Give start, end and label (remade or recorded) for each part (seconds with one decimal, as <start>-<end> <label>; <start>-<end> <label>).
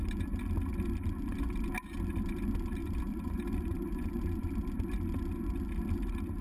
0.0-2.8 recorded; 2.8-4.1 remade; 4.1-6.4 recorded